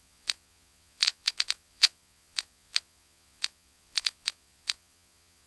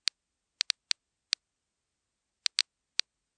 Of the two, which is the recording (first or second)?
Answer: second